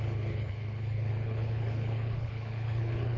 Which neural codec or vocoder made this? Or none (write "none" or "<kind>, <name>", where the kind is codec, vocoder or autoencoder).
codec, HILCodec